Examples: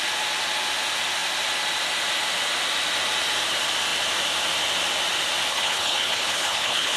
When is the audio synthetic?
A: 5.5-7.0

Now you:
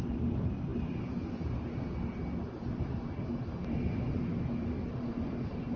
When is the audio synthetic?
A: none

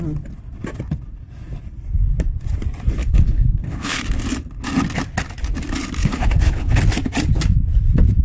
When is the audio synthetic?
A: 3.0-4.0; 6.0-6.8

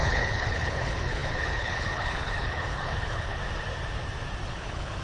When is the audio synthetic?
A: 0.0-3.4; 4.5-5.0

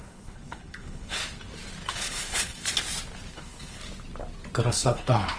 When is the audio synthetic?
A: 0.0-1.2; 1.9-2.6; 3.3-3.8; 4.7-5.4

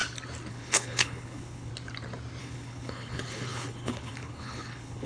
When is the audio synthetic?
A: 0.5-1.7; 2.4-5.1